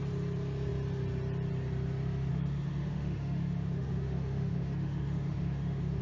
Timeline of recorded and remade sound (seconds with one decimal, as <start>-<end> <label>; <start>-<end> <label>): 0.0-2.3 recorded; 2.3-6.0 remade